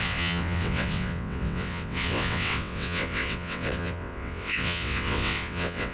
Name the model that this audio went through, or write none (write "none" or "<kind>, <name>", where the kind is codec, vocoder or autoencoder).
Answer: vocoder, WaveNeXt